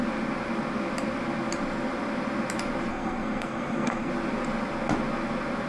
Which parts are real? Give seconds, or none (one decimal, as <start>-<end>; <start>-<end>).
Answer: 0.0-2.9; 4.1-5.7